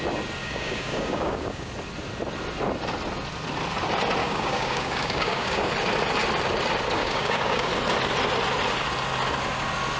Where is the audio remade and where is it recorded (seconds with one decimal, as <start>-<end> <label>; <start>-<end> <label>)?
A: 0.0-0.4 recorded; 0.4-1.7 remade; 1.7-4.2 recorded; 4.2-5.7 remade; 5.7-7.0 recorded; 7.0-7.7 remade; 7.7-10.0 recorded